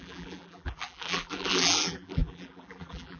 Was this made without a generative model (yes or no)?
no